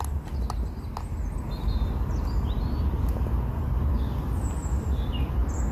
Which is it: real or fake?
real